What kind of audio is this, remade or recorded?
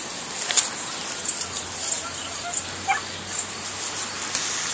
recorded